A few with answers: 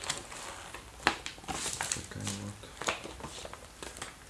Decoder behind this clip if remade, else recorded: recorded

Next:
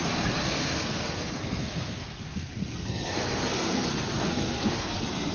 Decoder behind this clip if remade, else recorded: remade, codec, SNAC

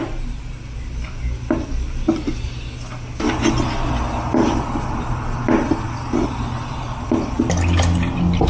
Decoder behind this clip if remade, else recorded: recorded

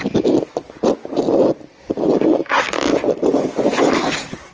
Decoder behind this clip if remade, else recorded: recorded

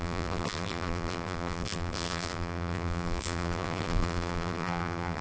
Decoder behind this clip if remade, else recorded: remade, vocoder, BigVGAN v2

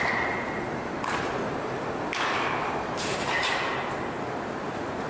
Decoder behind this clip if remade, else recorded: recorded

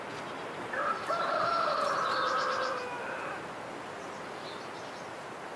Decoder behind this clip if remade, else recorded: recorded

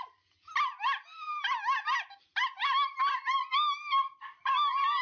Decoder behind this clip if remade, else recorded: recorded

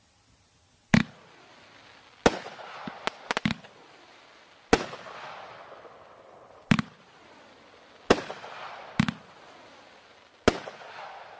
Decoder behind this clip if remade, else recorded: recorded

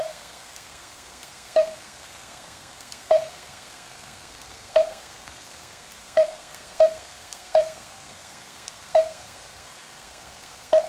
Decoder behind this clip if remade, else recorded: remade, codec, SNAC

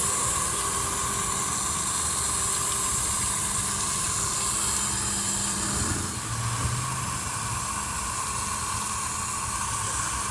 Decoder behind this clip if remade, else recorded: recorded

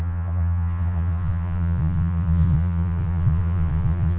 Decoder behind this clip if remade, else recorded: remade, vocoder, Vocos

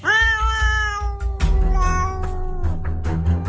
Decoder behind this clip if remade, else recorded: recorded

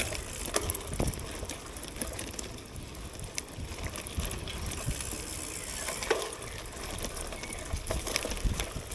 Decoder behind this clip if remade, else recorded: recorded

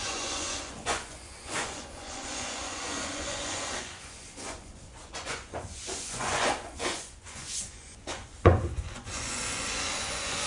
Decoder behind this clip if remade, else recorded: remade, vocoder, Vocos